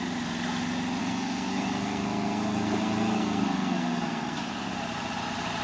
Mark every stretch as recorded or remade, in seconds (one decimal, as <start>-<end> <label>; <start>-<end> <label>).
0.0-1.0 recorded; 1.0-4.4 remade; 4.4-5.6 recorded